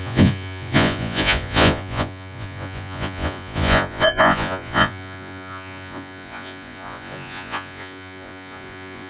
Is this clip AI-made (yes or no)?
yes